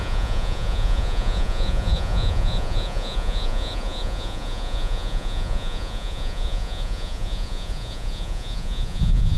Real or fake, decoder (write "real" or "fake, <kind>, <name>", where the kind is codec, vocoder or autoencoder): fake, vocoder, Vocos